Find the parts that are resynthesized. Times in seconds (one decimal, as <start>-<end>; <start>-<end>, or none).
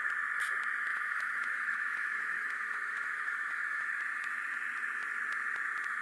0.9-3.9